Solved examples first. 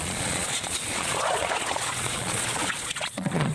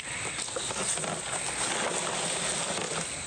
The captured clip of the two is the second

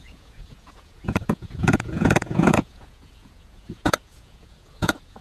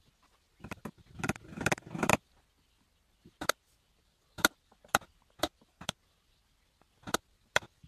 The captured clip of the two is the second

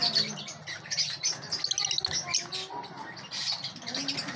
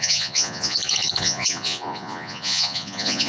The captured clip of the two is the first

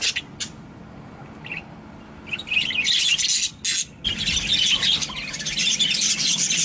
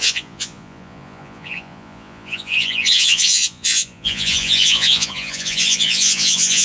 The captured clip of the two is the first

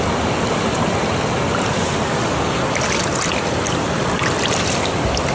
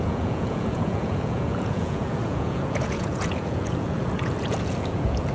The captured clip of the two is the first